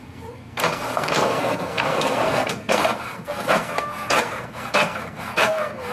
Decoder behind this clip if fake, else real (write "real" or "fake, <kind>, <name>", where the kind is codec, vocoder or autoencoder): fake, codec, SNAC